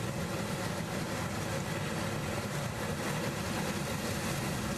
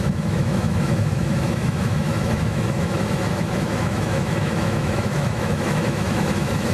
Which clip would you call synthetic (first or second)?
second